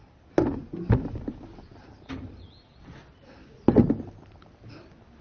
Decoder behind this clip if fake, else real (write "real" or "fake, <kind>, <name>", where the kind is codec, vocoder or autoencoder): real